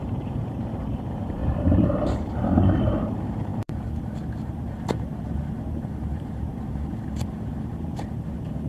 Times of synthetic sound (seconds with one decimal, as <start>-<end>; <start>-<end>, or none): 0.0-8.7